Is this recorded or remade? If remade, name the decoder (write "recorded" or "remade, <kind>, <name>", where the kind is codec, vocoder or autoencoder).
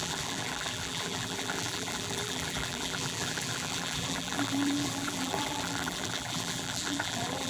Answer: remade, vocoder, BigVGAN v2